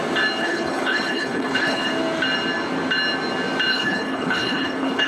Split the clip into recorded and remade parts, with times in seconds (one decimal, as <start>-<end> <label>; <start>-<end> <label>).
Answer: 0.0-0.4 recorded; 0.4-1.9 remade; 1.9-3.7 recorded; 3.7-5.1 remade